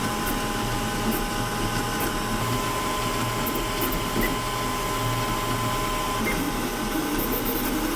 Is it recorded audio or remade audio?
recorded